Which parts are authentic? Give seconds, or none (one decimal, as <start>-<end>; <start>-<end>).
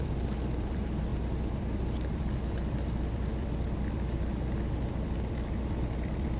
none